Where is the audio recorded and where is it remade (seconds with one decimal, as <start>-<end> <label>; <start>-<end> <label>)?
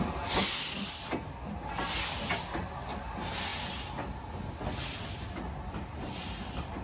0.0-6.8 recorded